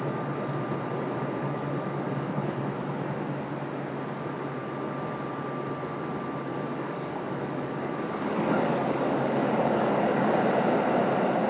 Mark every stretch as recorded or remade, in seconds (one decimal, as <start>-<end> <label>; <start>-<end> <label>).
0.0-1.4 recorded; 1.4-2.6 remade; 2.6-6.5 recorded; 6.5-10.4 remade; 10.4-11.5 recorded